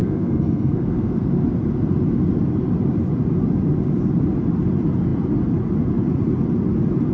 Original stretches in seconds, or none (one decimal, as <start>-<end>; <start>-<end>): 1.3-7.1